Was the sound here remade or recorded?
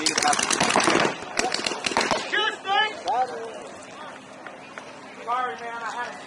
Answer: recorded